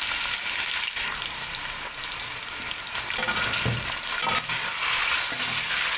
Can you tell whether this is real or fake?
real